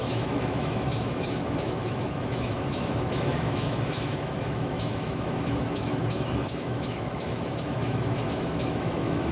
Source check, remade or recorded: remade